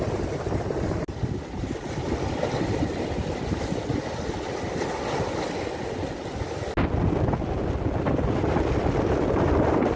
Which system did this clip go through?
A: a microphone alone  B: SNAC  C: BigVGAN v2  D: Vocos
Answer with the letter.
A